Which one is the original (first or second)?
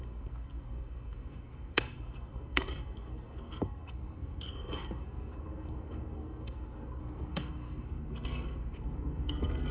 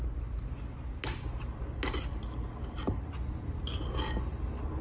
second